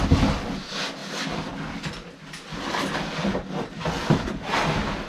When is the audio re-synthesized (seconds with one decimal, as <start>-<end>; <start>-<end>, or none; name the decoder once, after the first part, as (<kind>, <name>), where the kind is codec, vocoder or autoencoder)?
none